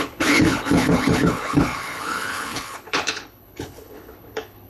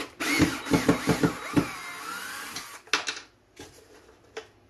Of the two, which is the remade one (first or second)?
first